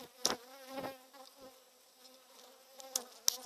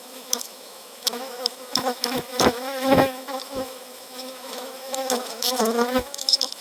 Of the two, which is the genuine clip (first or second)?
first